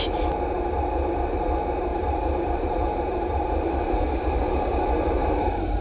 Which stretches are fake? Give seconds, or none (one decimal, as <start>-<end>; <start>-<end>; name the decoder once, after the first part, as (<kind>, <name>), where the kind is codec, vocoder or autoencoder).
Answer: 1.9-5.8 (vocoder, BigVGAN v2)